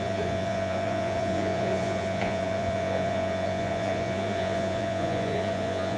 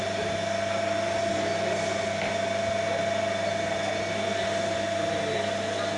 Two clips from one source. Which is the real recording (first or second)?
second